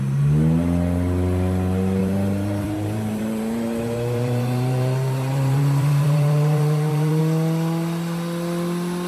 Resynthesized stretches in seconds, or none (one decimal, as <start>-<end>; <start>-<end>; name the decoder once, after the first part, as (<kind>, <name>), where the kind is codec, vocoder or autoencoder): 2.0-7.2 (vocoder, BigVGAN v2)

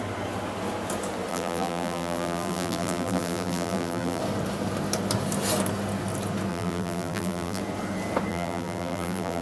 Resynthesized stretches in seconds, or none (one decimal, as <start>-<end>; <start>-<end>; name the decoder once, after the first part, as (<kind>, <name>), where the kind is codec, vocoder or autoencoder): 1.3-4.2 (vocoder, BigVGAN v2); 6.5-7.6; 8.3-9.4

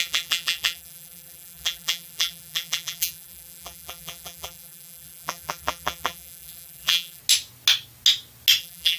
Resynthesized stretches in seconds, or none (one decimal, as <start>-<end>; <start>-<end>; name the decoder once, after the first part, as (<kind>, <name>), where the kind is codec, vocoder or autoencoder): 0.0-7.2 (vocoder, BigVGAN v2); 8.6-9.0